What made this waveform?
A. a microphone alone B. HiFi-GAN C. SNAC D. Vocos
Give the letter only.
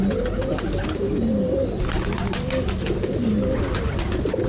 A